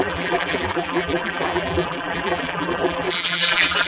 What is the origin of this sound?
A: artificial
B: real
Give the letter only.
A